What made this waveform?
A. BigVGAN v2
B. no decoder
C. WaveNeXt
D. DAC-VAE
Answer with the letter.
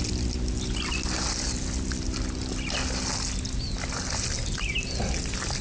B